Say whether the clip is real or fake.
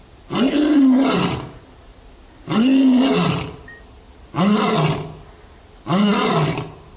real